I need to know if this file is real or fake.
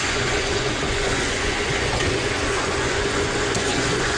fake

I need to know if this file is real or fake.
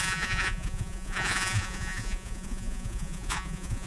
fake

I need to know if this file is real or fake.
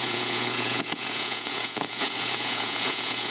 fake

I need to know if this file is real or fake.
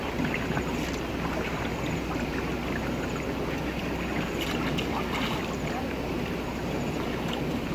real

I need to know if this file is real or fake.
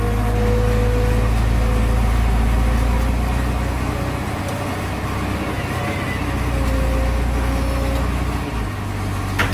real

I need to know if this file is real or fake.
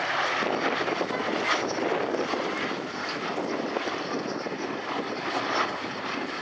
real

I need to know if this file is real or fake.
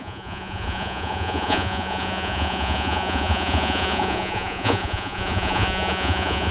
fake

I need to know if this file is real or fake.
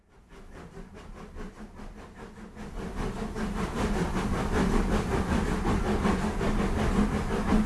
real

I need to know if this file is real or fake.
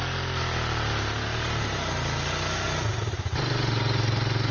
real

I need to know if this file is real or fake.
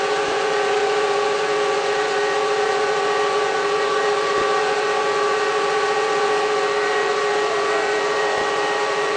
fake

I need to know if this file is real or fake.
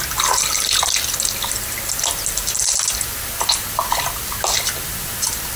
real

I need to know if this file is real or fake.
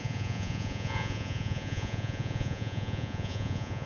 fake